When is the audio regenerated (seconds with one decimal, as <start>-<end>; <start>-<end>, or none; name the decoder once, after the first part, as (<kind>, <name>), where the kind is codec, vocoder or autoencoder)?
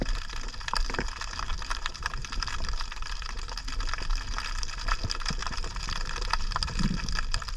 1.5-3.6 (vocoder, BigVGAN v2); 5.4-6.8